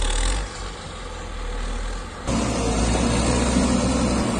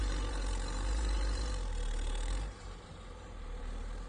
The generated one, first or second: second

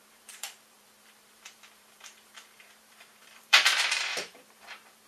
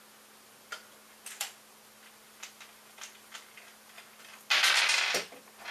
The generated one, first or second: first